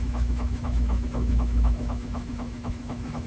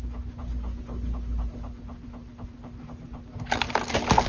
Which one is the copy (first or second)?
first